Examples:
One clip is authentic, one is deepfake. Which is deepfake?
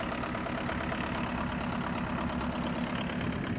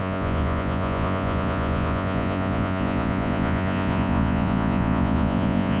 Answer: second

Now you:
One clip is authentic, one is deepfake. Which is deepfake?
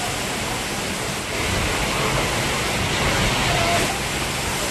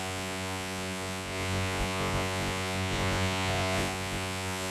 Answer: second